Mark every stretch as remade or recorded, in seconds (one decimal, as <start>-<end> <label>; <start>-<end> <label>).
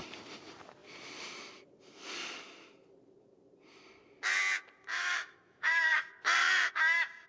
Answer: 0.0-4.9 recorded; 4.9-6.0 remade; 6.0-7.3 recorded